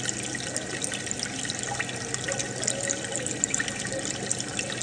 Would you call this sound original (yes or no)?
yes